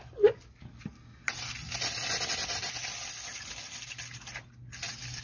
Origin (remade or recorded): recorded